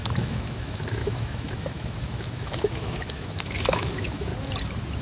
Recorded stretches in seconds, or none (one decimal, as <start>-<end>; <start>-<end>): 4.3-5.0